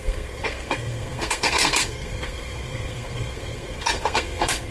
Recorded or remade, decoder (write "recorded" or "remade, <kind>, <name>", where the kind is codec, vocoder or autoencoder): remade, codec, SNAC